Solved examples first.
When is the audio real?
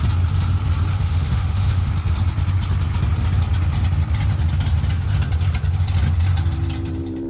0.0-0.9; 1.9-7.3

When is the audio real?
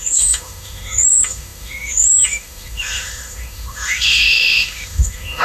none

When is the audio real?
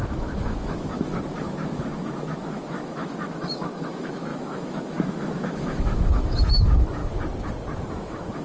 7.0-7.9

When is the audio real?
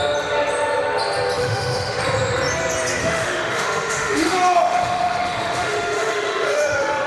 0.0-1.4; 2.0-3.0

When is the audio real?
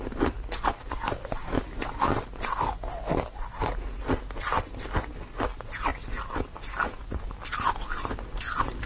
0.0-8.9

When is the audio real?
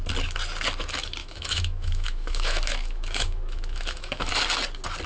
0.0-1.2; 4.3-5.1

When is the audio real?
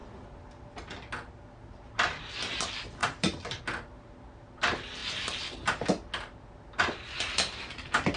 0.0-8.2